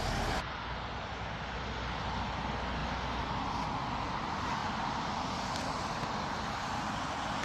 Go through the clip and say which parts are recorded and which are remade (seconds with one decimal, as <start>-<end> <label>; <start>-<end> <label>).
0.0-7.4 recorded